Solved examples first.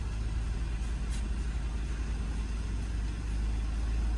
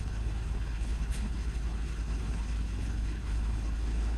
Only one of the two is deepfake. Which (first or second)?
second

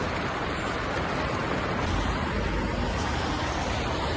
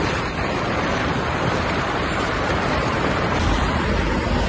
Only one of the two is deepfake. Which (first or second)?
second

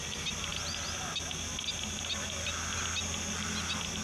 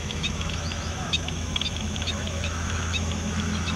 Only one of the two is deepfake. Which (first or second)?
second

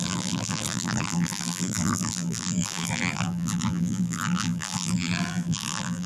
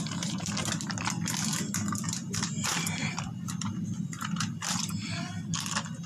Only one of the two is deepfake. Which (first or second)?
first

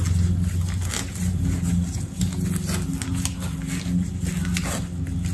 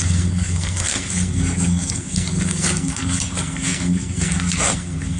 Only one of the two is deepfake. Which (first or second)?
second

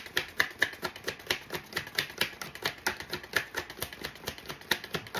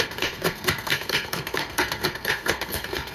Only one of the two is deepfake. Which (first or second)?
second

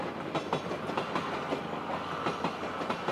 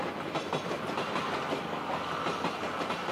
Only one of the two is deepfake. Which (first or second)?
second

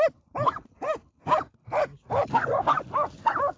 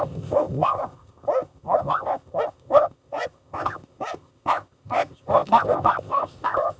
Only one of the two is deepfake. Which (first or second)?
second